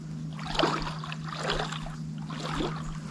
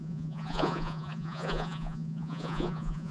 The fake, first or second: second